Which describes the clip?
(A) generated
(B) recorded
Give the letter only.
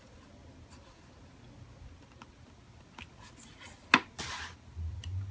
B